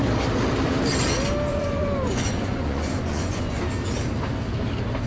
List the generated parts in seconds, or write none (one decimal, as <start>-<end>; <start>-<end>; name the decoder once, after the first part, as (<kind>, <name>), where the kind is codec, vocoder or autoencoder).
1.5-3.6 (vocoder, Vocos)